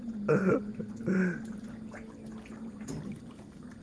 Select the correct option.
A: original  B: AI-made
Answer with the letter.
A